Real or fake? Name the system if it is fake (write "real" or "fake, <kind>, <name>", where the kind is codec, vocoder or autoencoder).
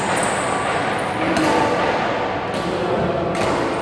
real